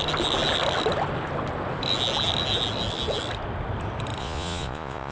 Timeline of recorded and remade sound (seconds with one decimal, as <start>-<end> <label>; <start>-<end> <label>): 0.0-4.2 recorded; 4.2-5.1 remade